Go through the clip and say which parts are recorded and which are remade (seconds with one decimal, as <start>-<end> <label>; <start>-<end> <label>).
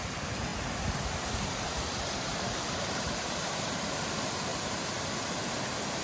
0.0-0.5 recorded; 0.5-4.1 remade; 4.1-4.5 recorded; 4.5-5.1 remade; 5.1-6.0 recorded